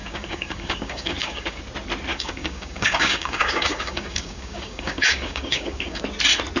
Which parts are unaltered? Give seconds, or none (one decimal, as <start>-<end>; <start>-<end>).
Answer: 1.6-2.1; 6.0-6.6

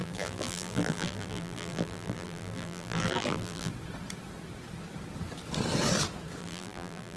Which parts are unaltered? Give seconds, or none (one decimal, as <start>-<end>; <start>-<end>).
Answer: 3.7-6.4

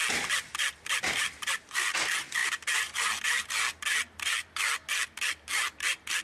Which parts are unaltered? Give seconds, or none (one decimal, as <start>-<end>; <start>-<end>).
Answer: 0.0-6.2

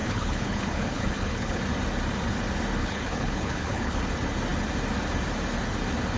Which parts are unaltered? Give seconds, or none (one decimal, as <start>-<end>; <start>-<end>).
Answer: 1.6-2.8; 4.1-6.2

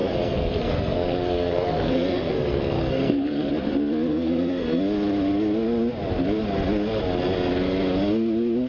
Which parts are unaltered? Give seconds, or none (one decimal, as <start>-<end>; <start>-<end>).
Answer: 3.5-4.1; 4.8-8.7